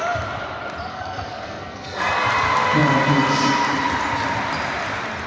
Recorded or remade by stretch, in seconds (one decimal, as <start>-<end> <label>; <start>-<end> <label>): 0.0-0.9 recorded; 0.9-2.1 remade; 2.1-5.3 recorded

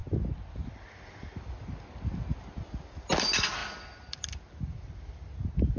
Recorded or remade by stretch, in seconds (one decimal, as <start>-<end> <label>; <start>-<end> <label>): 0.0-5.8 recorded

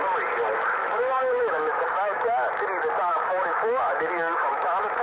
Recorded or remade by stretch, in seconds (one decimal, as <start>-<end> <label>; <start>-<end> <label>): 0.0-0.8 recorded; 0.8-2.5 remade; 2.5-3.1 recorded; 3.1-5.0 remade

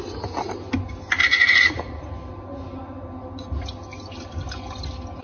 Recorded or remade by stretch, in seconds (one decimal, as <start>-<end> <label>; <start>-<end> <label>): 0.0-1.2 recorded; 1.2-2.1 remade; 2.1-5.2 recorded

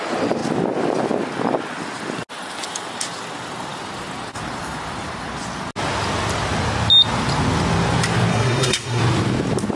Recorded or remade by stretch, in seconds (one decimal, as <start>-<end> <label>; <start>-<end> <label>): 0.0-8.3 recorded; 8.3-9.0 remade; 9.0-9.8 recorded

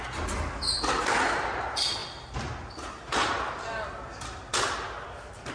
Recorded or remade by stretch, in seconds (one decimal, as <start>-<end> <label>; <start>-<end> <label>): 0.0-5.5 recorded

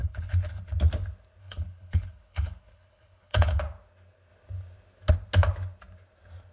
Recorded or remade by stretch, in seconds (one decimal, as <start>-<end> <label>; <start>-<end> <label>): 0.0-0.6 remade; 0.6-1.4 recorded; 1.4-3.6 remade; 3.6-6.5 recorded